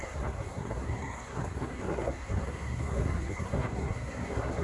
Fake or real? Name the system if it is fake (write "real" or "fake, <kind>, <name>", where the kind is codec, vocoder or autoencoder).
fake, codec, SNAC